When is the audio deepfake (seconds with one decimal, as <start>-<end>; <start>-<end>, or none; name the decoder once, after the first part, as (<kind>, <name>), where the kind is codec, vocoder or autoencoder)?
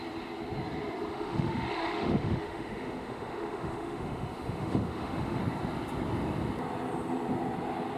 1.1-5.4 (autoencoder, DAC-VAE)